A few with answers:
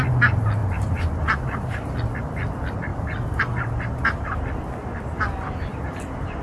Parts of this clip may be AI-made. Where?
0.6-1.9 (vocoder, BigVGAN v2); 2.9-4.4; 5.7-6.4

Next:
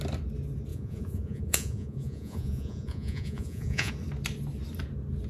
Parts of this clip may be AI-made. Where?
0.7-3.9 (vocoder, Vocos)

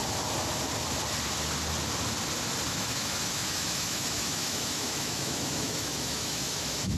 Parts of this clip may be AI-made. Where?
2.7-7.0 (autoencoder, DAC-VAE)

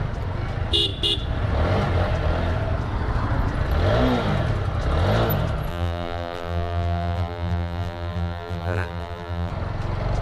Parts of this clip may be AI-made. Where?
5.7-9.5 (vocoder, BigVGAN v2)

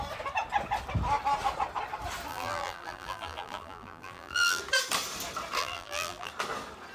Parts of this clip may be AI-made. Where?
2.3-4.6 (vocoder, BigVGAN v2); 5.6-6.3

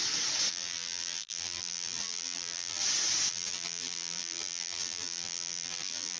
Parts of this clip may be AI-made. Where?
0.5-2.8 (vocoder, BigVGAN v2); 3.3-6.2